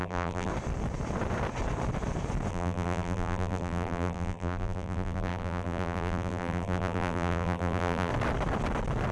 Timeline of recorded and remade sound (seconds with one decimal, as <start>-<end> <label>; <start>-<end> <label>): 0.0-0.5 remade; 0.5-2.5 recorded; 2.5-8.1 remade; 8.1-9.1 recorded